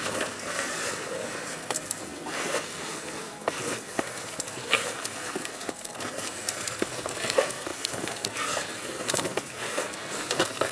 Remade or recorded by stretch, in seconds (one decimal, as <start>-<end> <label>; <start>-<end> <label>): 0.0-10.7 remade

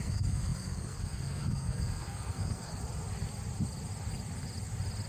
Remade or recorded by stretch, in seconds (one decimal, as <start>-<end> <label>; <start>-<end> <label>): 0.0-2.7 remade; 2.7-5.1 recorded

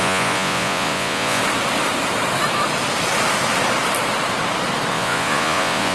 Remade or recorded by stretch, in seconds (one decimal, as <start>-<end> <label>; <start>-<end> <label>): 0.0-1.4 remade; 1.4-4.9 recorded; 4.9-5.9 remade

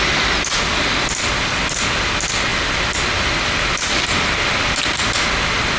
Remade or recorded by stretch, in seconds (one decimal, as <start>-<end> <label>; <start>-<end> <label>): 0.0-5.8 recorded

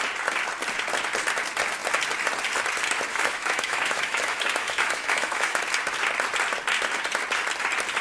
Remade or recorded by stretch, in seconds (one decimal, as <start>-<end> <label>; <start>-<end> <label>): 0.0-3.1 recorded; 3.1-5.6 remade; 5.6-8.0 recorded

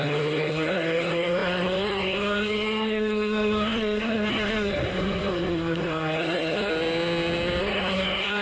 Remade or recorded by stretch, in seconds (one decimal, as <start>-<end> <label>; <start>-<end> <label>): 0.0-6.7 remade; 6.7-7.6 recorded; 7.6-8.4 remade